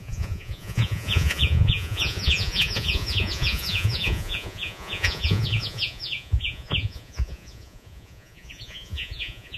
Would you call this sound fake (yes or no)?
yes